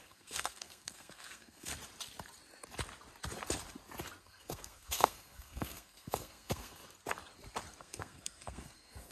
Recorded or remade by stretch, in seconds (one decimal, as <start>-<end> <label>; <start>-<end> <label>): 0.0-1.7 remade; 1.7-4.2 recorded; 4.2-6.8 remade; 6.8-7.8 recorded; 7.8-9.1 remade